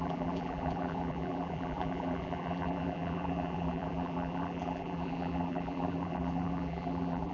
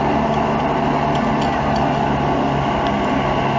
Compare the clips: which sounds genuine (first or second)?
second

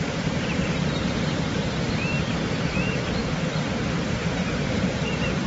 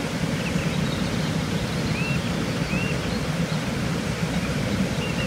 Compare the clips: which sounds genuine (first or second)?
second